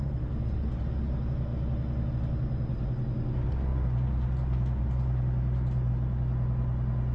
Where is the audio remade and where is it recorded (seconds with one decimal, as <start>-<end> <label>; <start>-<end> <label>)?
0.0-7.1 recorded